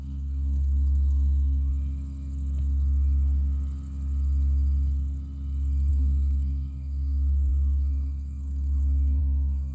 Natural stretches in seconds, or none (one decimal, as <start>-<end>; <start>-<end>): 1.7-5.9